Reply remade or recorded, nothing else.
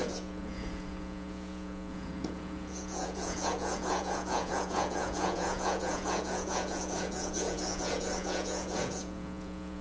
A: remade